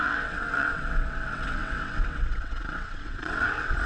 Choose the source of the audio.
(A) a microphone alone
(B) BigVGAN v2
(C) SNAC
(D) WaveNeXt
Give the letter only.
D